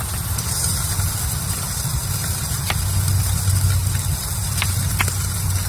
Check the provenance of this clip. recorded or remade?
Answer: recorded